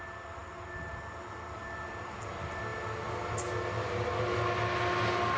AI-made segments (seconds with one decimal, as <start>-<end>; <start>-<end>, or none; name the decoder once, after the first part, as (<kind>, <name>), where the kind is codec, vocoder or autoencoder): none